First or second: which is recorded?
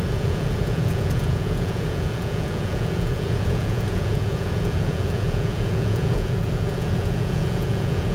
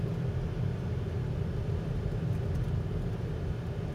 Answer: second